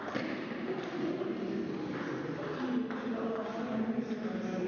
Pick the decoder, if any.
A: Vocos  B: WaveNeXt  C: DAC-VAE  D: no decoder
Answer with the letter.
D